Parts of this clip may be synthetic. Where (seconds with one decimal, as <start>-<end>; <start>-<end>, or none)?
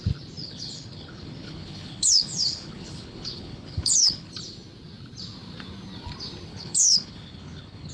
0.4-4.3; 6.5-7.9